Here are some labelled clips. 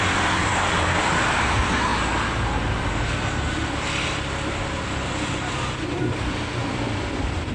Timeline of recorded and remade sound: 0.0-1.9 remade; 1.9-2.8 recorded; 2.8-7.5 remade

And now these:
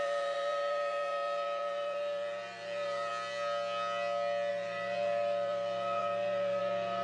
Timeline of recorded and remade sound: 0.0-3.1 remade; 3.1-4.5 recorded; 4.5-7.0 remade

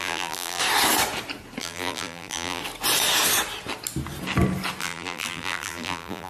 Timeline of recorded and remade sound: 0.0-0.6 remade; 0.6-1.6 recorded; 1.6-2.6 remade; 2.6-4.8 recorded; 4.8-6.3 remade

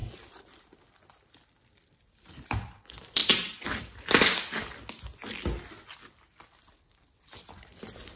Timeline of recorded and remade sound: 0.0-8.2 recorded